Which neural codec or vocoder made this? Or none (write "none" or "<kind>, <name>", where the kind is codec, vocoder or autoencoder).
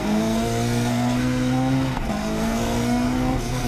codec, SNAC